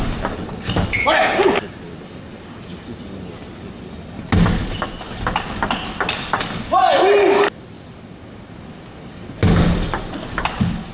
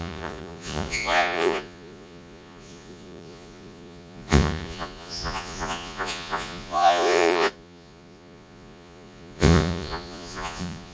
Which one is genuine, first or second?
first